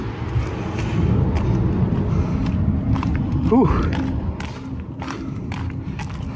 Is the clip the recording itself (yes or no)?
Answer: yes